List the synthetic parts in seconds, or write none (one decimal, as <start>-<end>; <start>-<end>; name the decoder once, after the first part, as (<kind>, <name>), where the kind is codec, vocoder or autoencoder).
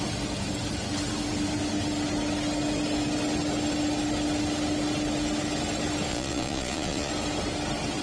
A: 6.1-7.1 (vocoder, Vocos)